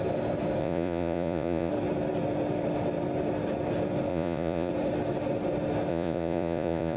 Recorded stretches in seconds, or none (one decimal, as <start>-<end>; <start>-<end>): 0.0-0.6; 1.7-4.1; 4.7-5.9